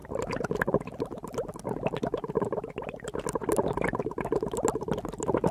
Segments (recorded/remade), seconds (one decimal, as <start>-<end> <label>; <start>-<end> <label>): 0.0-5.5 recorded